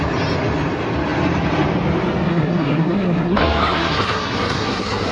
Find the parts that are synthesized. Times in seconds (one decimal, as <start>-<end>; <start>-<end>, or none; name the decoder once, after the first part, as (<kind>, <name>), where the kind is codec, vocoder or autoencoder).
2.3-5.1 (codec, SNAC)